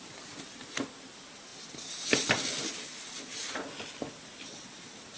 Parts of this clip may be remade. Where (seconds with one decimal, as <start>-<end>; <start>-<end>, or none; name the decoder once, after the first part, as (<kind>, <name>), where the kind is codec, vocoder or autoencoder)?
none